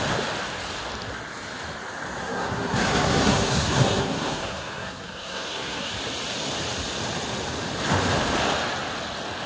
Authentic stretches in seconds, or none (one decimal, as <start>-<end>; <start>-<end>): 0.0-2.2; 5.9-9.5